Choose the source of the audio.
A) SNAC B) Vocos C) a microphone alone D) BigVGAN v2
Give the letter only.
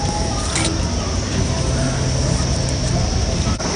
C